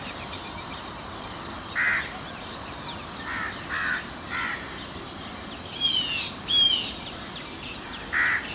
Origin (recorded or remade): recorded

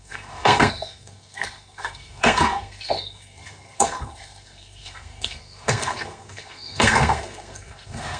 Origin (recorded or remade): remade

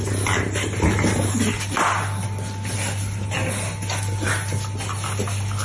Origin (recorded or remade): recorded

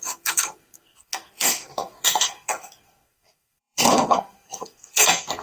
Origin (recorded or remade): remade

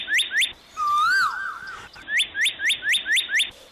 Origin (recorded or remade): recorded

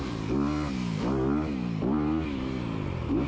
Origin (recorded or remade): recorded